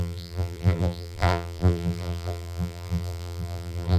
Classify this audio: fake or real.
fake